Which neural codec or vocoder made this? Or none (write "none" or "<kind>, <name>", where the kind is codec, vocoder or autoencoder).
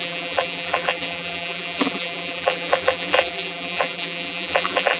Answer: vocoder, BigVGAN v2